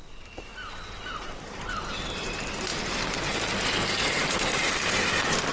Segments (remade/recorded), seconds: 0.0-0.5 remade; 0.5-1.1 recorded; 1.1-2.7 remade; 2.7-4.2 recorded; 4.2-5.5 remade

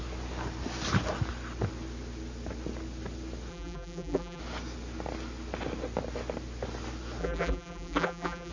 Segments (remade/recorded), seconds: 0.0-3.5 recorded; 3.5-4.4 remade; 4.4-7.2 recorded; 7.2-8.5 remade

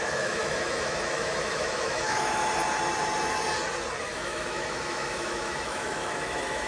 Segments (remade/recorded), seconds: 0.0-2.4 remade; 2.4-4.0 recorded; 4.0-6.7 remade

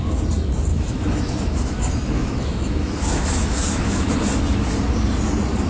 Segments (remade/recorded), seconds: 0.0-0.7 recorded; 0.7-4.1 remade; 4.1-5.7 recorded